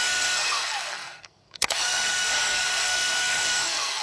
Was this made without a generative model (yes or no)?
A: no